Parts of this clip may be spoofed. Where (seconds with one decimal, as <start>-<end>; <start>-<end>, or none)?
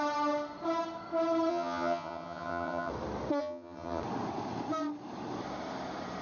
1.5-2.9; 3.4-4.0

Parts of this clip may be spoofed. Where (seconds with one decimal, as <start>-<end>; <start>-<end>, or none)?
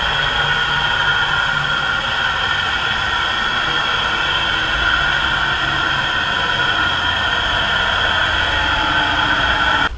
none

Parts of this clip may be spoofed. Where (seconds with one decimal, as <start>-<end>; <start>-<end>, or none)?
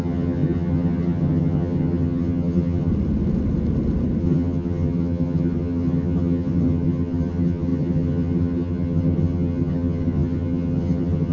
0.0-2.9; 4.2-11.3